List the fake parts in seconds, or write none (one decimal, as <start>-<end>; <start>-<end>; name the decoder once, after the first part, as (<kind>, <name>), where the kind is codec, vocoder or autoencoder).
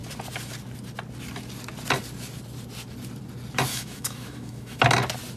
3.7-4.8 (autoencoder, DAC-VAE)